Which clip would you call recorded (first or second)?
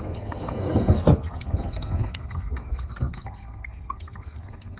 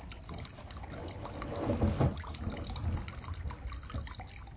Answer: second